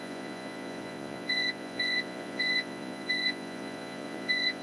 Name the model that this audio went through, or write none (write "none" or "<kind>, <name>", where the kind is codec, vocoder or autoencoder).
vocoder, Vocos